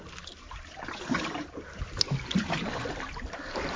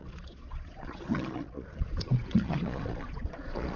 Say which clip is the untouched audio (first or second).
first